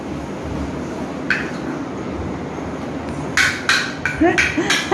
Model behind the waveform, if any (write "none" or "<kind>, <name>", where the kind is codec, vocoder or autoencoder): none